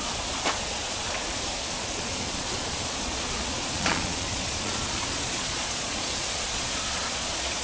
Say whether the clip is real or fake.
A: fake